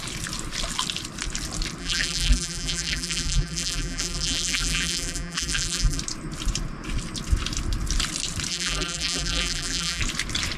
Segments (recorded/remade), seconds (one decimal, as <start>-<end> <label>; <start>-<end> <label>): 0.0-1.8 recorded; 1.8-6.0 remade; 6.0-8.5 recorded; 8.5-10.0 remade; 10.0-10.6 recorded